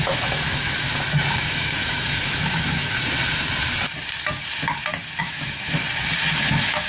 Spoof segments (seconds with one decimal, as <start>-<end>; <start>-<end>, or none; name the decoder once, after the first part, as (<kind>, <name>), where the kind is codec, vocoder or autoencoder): 0.0-0.9 (autoencoder, DAC-VAE); 1.4-3.0; 5.2-5.8; 6.4-6.9